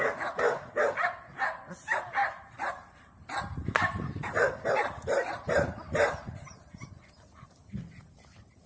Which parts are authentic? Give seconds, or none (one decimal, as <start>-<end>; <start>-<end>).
0.0-2.2; 7.1-8.7